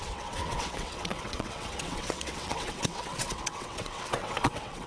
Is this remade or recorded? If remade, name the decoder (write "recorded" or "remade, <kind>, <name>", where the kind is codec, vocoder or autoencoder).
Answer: remade, vocoder, WaveNeXt